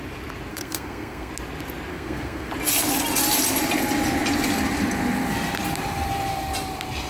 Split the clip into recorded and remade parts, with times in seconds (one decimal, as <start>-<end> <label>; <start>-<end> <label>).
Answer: 0.0-0.5 recorded; 0.5-1.3 remade; 1.3-1.9 recorded; 1.9-2.5 remade; 2.5-7.1 recorded